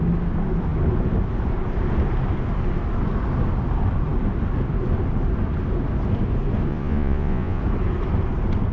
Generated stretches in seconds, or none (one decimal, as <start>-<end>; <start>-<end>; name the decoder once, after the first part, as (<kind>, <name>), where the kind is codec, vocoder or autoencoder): 6.7-7.6 (vocoder, Vocos)